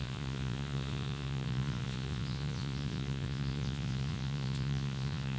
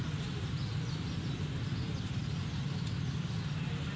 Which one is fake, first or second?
first